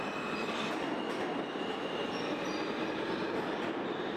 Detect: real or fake real